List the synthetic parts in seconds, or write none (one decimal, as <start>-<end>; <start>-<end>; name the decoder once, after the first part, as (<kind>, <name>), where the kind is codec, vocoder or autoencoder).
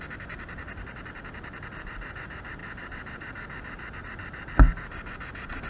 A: none